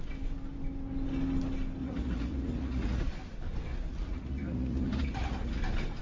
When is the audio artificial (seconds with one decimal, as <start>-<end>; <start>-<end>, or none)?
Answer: 1.8-3.1; 3.7-5.6